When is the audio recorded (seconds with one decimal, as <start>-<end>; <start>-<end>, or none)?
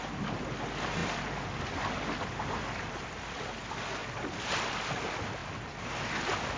0.0-6.6